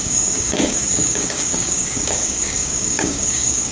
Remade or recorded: remade